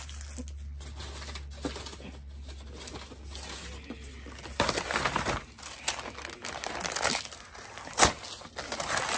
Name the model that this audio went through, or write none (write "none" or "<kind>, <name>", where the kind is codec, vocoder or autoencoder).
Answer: none